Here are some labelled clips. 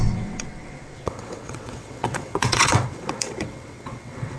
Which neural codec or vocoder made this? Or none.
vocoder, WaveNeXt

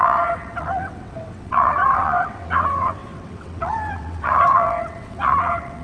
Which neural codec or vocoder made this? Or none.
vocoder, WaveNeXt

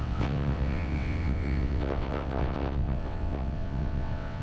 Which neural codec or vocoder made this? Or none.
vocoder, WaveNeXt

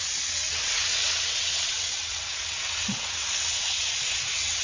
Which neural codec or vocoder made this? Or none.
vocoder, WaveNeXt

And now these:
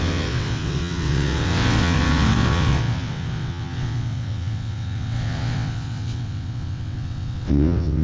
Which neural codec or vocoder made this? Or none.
vocoder, WaveNeXt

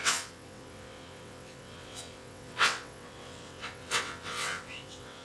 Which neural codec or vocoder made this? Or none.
vocoder, WaveNeXt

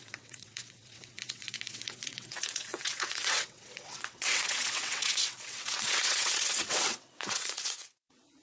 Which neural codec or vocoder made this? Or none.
vocoder, WaveNeXt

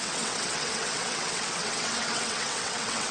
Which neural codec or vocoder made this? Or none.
vocoder, WaveNeXt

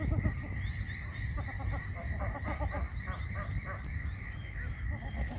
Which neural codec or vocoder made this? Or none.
none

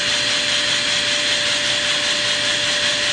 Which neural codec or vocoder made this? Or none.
none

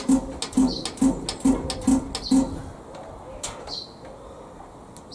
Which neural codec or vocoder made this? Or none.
none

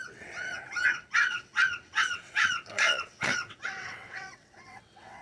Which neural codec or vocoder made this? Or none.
vocoder, WaveNeXt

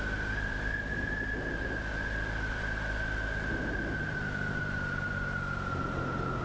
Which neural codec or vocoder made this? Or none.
none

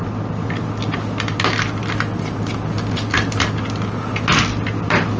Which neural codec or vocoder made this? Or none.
none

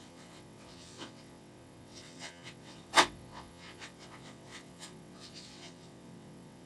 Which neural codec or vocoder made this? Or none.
vocoder, WaveNeXt